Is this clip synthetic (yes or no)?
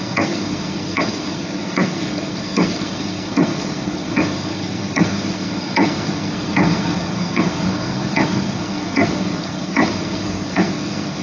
yes